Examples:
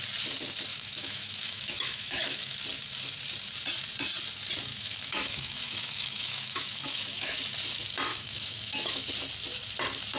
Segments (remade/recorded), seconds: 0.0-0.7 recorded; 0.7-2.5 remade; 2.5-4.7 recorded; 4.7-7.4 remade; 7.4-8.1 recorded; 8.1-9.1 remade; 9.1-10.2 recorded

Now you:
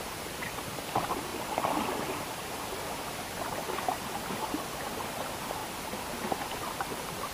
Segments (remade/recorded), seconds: 0.0-7.3 recorded